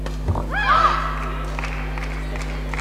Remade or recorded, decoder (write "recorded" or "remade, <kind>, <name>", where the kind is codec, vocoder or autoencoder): recorded